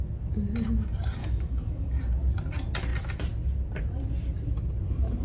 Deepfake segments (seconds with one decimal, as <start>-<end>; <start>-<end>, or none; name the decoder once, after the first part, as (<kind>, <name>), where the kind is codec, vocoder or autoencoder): 1.2-2.0 (autoencoder, DAC-VAE)